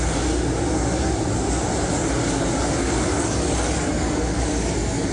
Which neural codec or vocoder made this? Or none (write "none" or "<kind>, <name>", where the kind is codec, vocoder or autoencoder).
none